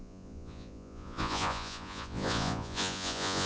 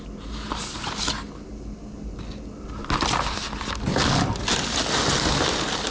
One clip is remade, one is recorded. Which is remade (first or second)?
first